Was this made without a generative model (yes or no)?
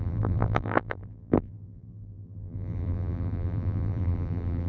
no